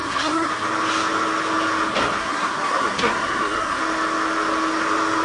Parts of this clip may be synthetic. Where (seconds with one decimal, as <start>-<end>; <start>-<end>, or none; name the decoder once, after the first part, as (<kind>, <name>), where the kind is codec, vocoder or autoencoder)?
0.0-0.5 (codec, SNAC); 2.2-3.8